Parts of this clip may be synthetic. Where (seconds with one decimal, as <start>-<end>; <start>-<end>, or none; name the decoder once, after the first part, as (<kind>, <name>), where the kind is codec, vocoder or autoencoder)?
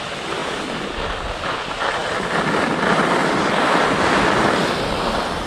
2.0-2.7 (vocoder, BigVGAN v2); 3.2-4.2